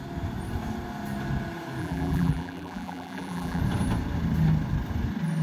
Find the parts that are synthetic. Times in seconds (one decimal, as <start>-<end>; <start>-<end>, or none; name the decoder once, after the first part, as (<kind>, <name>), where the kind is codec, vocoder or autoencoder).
1.8-3.6 (vocoder, BigVGAN v2)